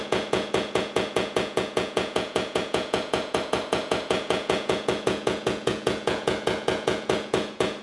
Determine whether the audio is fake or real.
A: fake